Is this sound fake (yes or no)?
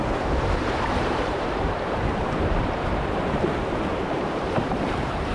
yes